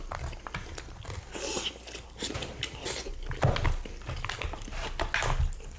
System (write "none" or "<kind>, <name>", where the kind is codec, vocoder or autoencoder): none